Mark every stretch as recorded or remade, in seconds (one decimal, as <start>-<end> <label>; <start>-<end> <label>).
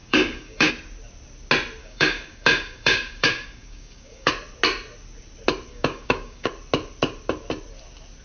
0.0-0.7 remade; 0.7-1.8 recorded; 1.8-4.3 remade; 4.3-5.7 recorded; 5.7-6.5 remade; 6.5-8.2 recorded